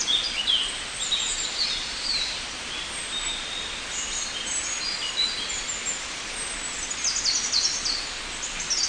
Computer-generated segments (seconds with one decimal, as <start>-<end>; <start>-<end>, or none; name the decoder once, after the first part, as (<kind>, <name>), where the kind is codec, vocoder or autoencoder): none